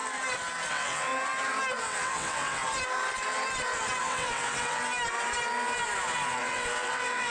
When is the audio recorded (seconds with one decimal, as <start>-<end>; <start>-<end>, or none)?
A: 0.0-0.7; 1.1-1.8; 2.6-4.0; 4.8-6.4